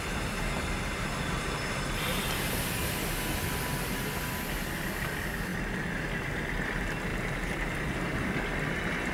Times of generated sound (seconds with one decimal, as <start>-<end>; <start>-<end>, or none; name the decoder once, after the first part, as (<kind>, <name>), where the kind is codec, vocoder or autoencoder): none